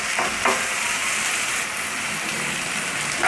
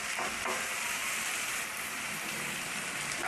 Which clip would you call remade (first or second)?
second